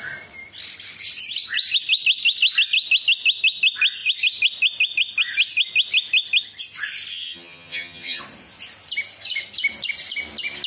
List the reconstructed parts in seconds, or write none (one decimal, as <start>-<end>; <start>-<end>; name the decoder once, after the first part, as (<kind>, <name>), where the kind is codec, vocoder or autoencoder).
7.1-8.2 (vocoder, HiFi-GAN)